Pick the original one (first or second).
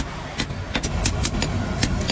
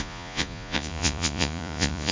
first